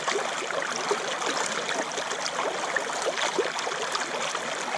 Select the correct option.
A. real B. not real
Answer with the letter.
A